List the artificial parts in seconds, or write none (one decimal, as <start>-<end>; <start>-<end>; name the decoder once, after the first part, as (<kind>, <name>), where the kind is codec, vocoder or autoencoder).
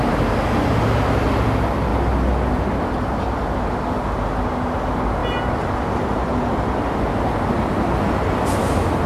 none